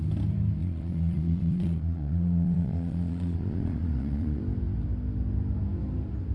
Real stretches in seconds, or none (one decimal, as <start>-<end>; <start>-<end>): 0.0-0.6; 4.4-6.3